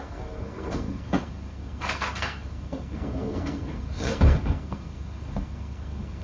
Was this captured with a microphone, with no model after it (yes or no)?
no